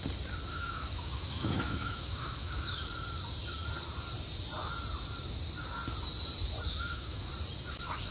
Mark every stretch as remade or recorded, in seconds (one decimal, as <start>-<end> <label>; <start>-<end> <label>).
0.0-0.5 recorded; 0.5-2.8 remade; 2.8-6.7 recorded; 6.7-7.3 remade; 7.3-8.1 recorded

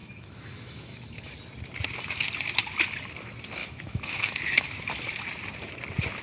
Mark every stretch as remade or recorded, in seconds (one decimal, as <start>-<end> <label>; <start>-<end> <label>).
0.0-1.3 remade; 1.3-3.6 recorded; 3.6-4.4 remade; 4.4-6.2 recorded

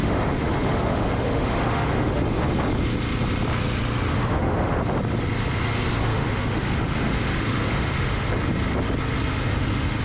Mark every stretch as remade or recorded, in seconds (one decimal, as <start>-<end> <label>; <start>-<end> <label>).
0.0-2.2 remade; 2.2-4.1 recorded; 4.1-4.7 remade; 4.7-6.1 recorded; 6.1-8.3 remade; 8.3-9.3 recorded; 9.3-10.0 remade

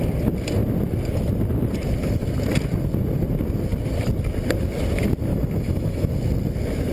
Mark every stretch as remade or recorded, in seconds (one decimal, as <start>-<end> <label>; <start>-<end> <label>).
0.0-5.3 recorded; 5.3-6.1 remade; 6.1-6.9 recorded

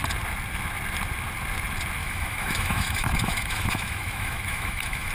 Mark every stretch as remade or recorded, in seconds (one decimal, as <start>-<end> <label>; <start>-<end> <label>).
0.0-2.0 recorded; 2.0-5.1 remade

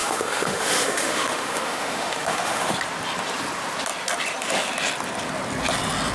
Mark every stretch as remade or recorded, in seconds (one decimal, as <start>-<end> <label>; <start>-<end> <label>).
0.0-2.7 remade; 2.7-6.1 recorded

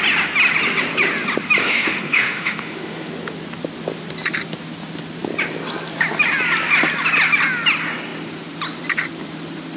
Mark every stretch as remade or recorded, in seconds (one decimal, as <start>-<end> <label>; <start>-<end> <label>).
0.0-1.6 recorded; 1.6-3.1 remade; 3.1-9.8 recorded